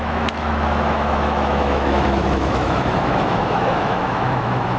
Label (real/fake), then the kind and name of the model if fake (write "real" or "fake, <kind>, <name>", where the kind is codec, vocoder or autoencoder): fake, autoencoder, DAC-VAE